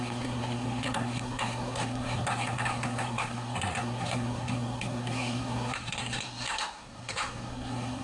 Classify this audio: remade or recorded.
remade